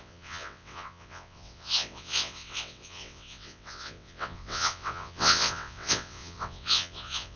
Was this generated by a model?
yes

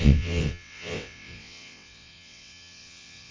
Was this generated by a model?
yes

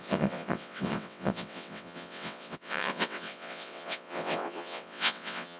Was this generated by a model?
yes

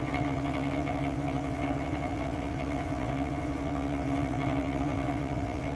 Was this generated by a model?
yes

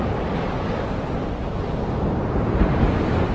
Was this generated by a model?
no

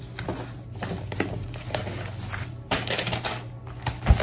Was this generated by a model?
no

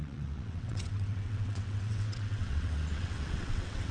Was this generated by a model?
yes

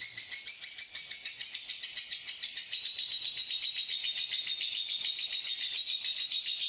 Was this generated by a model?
no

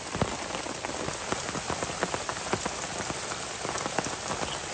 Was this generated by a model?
no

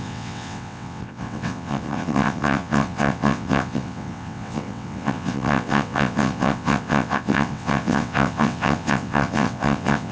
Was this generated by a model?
yes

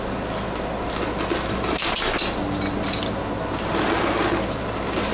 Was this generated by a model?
no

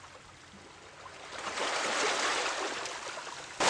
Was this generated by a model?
no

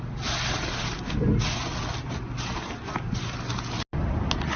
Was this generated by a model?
no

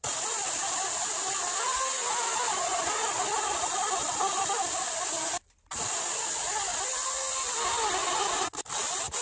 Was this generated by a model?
no